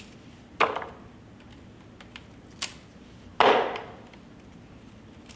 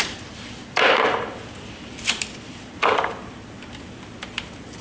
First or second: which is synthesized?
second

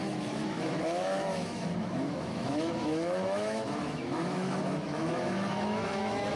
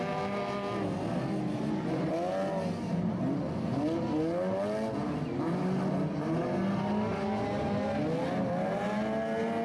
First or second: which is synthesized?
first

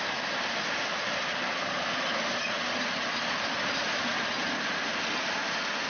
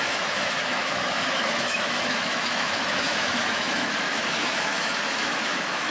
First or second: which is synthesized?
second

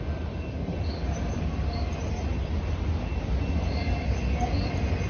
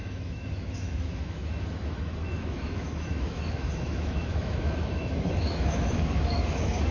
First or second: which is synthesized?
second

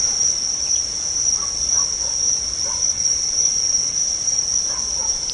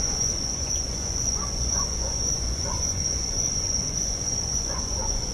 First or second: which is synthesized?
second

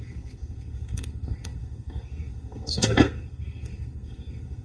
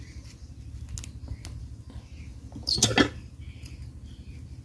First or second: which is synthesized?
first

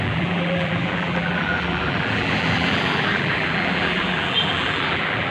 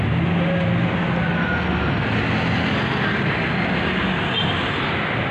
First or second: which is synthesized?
first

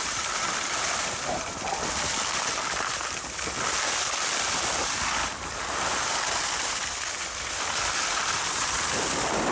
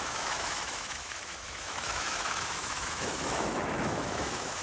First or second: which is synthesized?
second